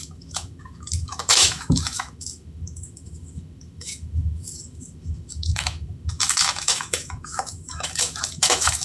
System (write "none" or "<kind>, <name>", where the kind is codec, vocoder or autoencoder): autoencoder, DAC-VAE